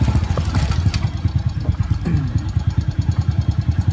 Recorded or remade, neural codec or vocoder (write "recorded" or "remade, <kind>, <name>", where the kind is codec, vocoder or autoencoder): remade, vocoder, BigVGAN v2